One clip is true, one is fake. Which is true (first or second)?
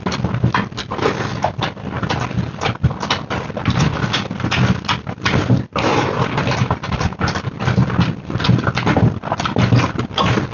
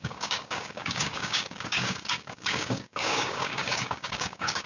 first